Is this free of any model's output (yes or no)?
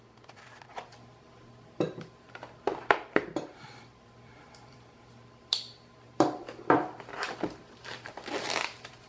no